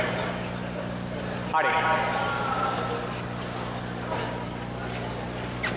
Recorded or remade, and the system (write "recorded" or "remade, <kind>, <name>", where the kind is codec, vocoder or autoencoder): recorded